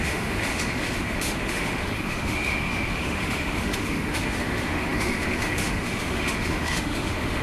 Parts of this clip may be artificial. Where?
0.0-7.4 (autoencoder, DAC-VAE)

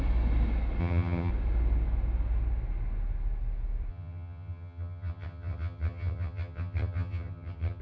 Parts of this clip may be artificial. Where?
0.8-1.3 (vocoder, HiFi-GAN); 3.9-7.8